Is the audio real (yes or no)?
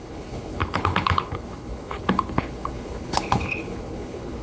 no